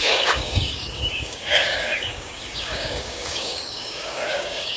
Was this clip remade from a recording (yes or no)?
yes